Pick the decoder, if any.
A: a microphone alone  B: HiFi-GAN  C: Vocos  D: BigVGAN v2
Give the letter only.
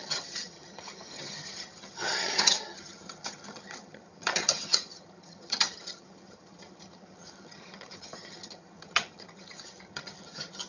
B